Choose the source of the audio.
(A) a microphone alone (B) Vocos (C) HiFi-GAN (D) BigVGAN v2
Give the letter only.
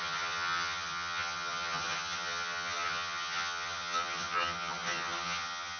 C